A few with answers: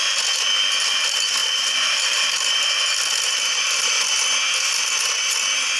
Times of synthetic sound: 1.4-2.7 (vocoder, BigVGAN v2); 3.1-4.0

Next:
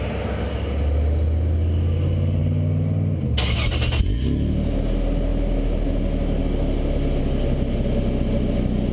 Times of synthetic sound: none

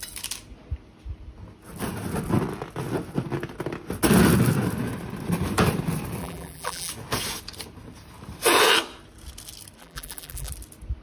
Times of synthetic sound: 6.2-6.9 (vocoder, BigVGAN v2); 9.8-10.5

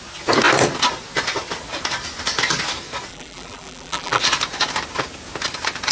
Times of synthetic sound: 3.1-4.2 (vocoder, BigVGAN v2)

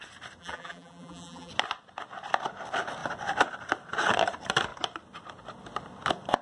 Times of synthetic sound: 0.4-1.5 (vocoder, BigVGAN v2)